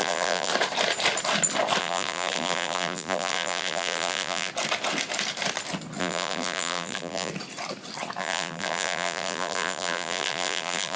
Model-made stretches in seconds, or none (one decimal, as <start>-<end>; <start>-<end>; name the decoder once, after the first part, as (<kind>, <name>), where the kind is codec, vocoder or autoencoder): 0.0-0.5 (vocoder, BigVGAN v2); 1.8-4.5; 6.0-7.3; 8.2-11.0